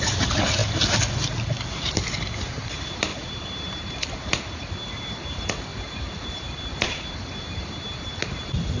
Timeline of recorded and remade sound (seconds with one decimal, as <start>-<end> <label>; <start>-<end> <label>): 0.0-0.6 remade; 0.6-1.7 recorded; 1.7-8.8 remade